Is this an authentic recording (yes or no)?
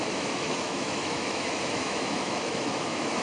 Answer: no